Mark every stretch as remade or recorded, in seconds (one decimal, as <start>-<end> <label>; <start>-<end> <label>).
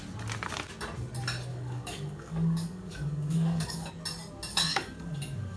0.0-1.5 recorded; 1.5-3.9 remade; 3.9-4.5 recorded; 4.5-5.6 remade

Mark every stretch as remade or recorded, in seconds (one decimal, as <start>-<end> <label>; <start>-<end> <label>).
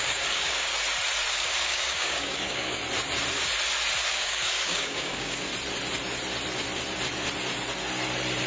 0.0-0.7 remade; 0.7-1.3 recorded; 1.3-2.8 remade; 2.8-4.1 recorded; 4.1-5.5 remade; 5.5-8.5 recorded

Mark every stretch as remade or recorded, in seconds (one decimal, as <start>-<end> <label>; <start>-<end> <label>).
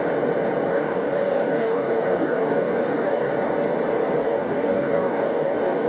0.0-0.7 recorded; 0.7-3.3 remade; 3.3-4.2 recorded; 4.2-5.9 remade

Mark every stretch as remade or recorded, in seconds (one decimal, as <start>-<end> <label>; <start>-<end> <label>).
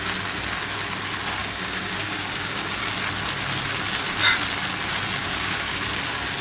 0.0-1.4 recorded; 1.4-2.8 remade; 2.8-5.2 recorded; 5.2-5.8 remade; 5.8-6.4 recorded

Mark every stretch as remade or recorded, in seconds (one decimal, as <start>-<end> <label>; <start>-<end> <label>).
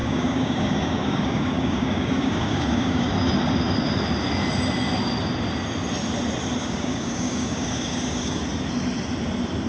0.0-3.1 remade; 3.1-6.6 recorded; 6.6-8.4 remade; 8.4-9.7 recorded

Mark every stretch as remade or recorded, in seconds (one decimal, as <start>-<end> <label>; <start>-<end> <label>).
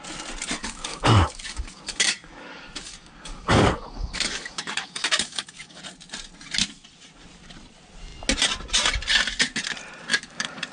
0.0-0.6 recorded; 0.6-5.8 remade; 5.8-10.1 recorded; 10.1-10.7 remade